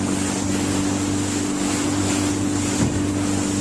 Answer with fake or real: real